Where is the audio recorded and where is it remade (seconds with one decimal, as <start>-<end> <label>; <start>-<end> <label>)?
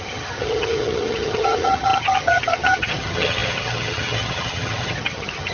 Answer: 0.0-5.5 remade